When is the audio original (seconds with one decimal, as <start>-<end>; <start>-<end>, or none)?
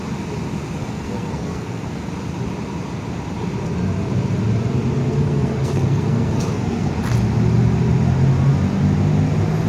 0.0-0.8; 2.1-5.0; 6.9-9.7